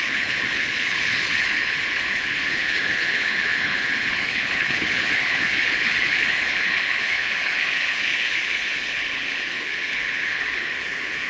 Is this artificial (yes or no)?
yes